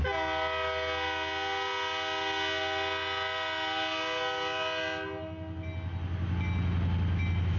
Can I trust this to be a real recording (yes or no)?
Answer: yes